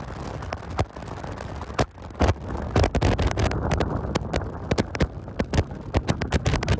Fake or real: real